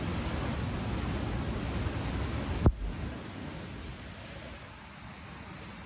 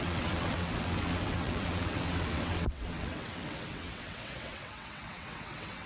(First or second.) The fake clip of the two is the second